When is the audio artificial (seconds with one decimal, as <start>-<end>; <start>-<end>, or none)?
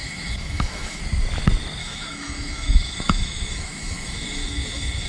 0.0-1.0; 1.8-5.1